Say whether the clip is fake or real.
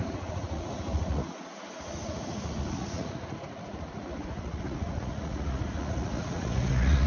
fake